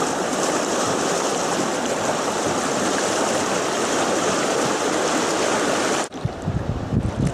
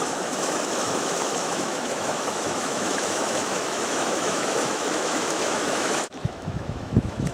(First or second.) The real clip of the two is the first